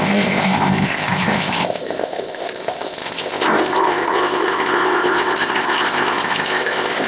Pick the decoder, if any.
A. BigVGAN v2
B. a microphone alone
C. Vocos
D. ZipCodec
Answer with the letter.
D